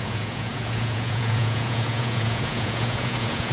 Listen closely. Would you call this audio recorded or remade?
remade